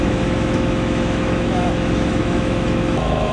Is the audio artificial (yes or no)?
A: yes